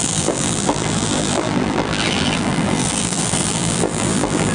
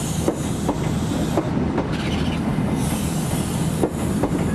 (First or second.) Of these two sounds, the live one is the second